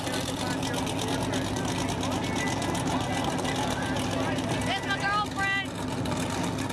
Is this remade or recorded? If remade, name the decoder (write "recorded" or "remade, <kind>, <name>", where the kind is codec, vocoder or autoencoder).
recorded